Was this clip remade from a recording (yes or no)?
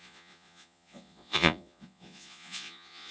yes